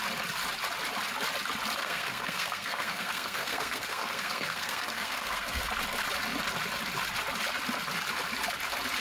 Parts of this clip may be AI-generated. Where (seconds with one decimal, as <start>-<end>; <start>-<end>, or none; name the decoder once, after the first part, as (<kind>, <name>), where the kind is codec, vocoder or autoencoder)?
1.8-5.7 (codec, SNAC)